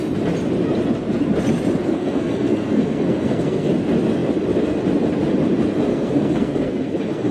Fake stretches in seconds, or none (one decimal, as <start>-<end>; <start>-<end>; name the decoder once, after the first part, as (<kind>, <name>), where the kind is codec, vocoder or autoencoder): 1.8-3.7 (codec, SNAC); 5.9-7.3